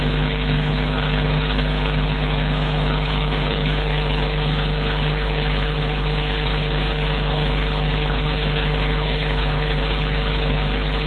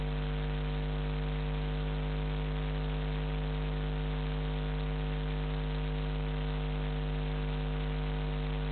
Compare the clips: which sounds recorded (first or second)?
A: second